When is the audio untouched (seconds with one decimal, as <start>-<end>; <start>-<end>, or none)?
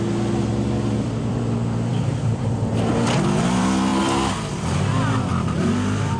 0.0-0.5; 1.3-1.9; 2.7-5.3